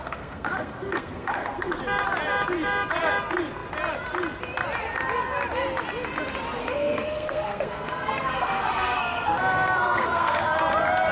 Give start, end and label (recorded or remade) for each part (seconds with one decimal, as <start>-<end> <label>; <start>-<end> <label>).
0.0-1.8 remade; 1.8-6.6 recorded; 6.6-10.6 remade; 10.6-11.1 recorded